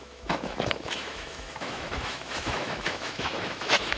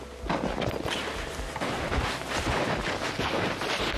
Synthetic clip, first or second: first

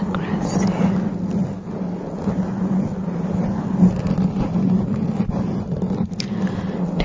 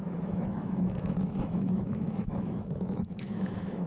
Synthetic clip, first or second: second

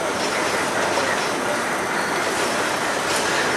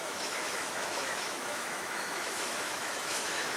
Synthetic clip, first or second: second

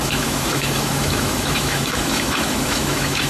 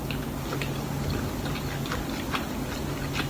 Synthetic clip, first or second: first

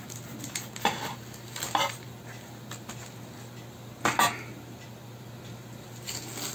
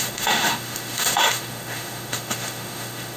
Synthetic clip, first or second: second